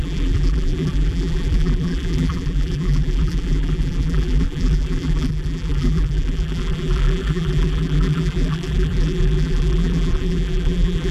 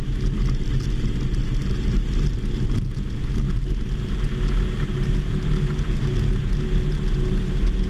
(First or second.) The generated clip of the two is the first